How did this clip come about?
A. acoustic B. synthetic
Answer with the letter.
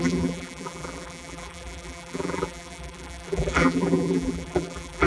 B